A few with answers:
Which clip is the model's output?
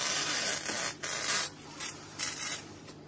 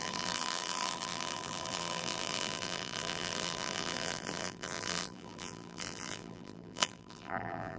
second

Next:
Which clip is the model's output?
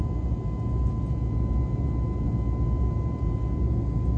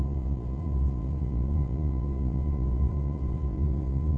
second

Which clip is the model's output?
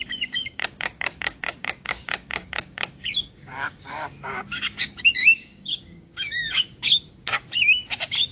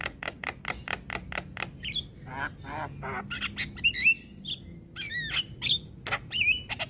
first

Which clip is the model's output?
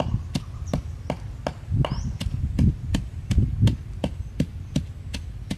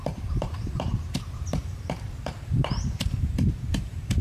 second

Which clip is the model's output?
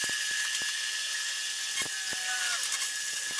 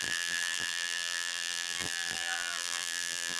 second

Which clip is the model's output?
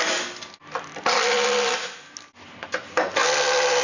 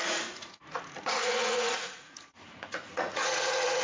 second